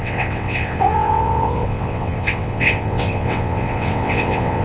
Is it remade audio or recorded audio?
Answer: remade